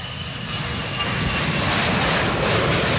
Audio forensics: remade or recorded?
recorded